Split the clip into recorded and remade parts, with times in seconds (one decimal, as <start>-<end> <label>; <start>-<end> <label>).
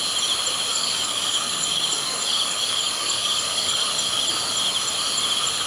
0.0-0.7 recorded; 0.7-3.9 remade; 3.9-5.7 recorded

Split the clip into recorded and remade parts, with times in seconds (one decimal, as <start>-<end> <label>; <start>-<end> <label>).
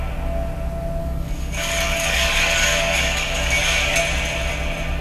0.0-1.0 recorded; 1.0-4.0 remade; 4.0-5.0 recorded